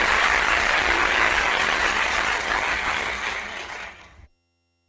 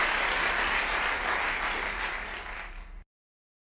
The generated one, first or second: first